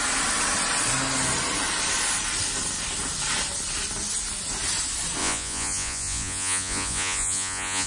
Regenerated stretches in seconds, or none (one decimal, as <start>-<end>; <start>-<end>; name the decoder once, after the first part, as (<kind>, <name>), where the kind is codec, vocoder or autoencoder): 5.2-7.9 (vocoder, Vocos)